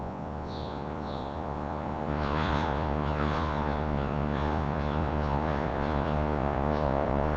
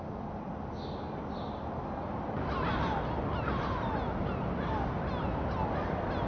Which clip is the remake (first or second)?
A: first